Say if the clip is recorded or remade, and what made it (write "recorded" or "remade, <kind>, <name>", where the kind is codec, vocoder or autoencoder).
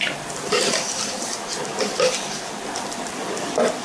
recorded